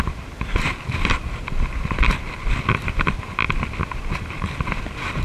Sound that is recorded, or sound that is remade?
remade